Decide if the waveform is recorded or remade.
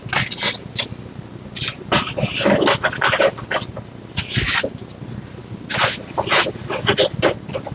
recorded